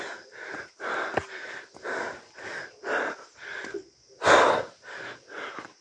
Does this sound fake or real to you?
real